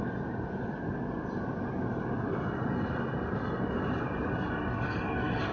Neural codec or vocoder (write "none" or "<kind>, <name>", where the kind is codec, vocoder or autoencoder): none